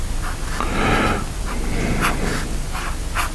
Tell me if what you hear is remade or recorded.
recorded